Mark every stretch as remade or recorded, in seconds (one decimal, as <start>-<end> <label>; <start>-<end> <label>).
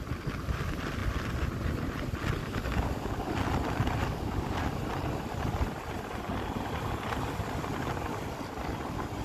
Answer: 0.0-2.4 recorded; 2.4-3.3 remade; 3.3-4.0 recorded; 4.0-4.6 remade; 4.6-9.2 recorded